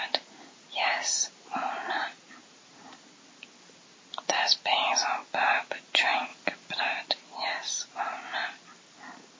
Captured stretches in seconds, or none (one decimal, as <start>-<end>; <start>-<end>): 0.0-9.4